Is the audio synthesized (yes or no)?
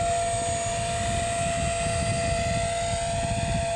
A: no